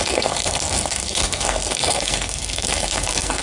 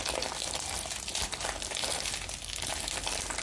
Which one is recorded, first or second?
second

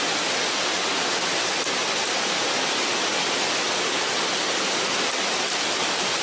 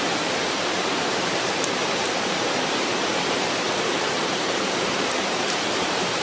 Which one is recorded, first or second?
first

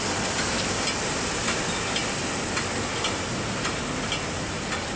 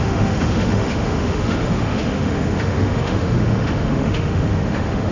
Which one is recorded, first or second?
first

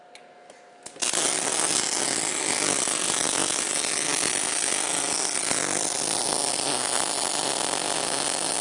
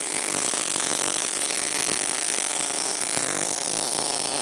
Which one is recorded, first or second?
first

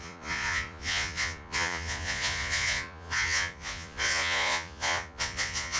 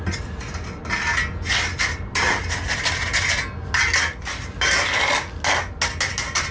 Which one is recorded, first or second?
second